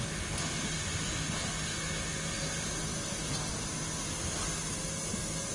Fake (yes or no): no